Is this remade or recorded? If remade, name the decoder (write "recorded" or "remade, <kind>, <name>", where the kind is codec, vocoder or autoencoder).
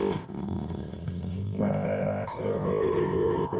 remade, codec, ZipCodec